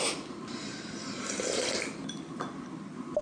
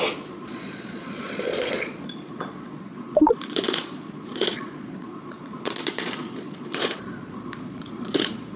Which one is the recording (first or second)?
first